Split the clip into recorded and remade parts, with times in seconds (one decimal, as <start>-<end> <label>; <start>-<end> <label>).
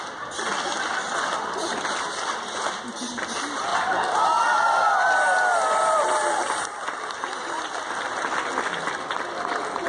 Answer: 0.0-9.9 recorded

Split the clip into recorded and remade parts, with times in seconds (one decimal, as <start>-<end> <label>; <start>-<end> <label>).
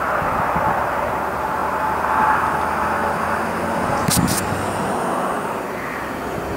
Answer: 0.0-6.6 recorded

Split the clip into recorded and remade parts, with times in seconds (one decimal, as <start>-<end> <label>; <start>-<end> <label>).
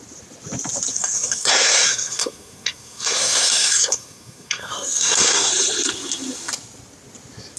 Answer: 0.0-0.9 recorded; 0.9-5.5 remade; 5.5-7.6 recorded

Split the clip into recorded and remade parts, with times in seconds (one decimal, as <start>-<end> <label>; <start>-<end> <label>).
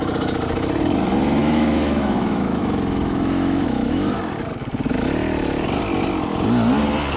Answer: 0.0-1.4 recorded; 1.4-4.2 remade; 4.2-7.2 recorded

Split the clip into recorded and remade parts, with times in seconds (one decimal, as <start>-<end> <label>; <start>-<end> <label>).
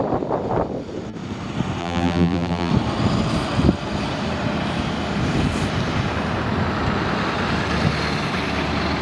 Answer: 0.0-1.8 recorded; 1.8-2.7 remade; 2.7-9.0 recorded